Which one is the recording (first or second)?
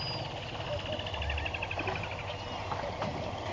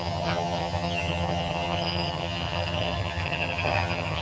first